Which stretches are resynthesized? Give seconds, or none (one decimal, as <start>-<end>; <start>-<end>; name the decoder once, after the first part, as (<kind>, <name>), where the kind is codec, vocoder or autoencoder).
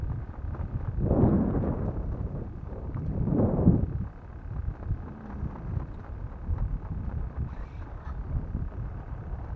1.3-4.3 (vocoder, BigVGAN v2)